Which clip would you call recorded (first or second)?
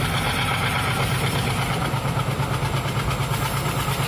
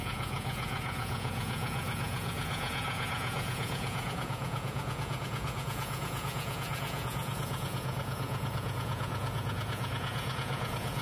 first